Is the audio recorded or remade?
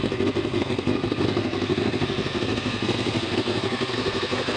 remade